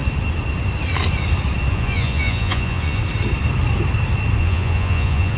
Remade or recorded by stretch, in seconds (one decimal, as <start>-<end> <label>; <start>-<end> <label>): 0.0-1.7 recorded; 1.7-3.0 remade; 3.0-4.4 recorded; 4.4-5.4 remade